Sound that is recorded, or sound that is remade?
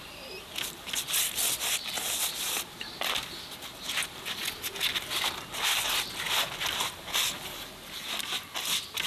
recorded